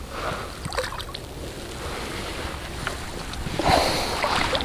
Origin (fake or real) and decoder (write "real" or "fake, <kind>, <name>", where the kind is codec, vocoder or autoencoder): real